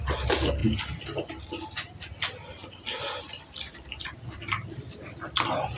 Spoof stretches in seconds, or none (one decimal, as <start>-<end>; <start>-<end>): none